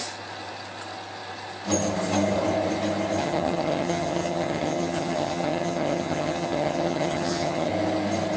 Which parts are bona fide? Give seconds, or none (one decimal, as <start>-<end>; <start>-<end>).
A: 0.0-3.2; 7.7-8.4